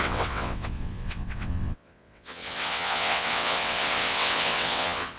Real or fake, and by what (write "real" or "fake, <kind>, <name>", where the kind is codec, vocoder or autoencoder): fake, vocoder, WaveNeXt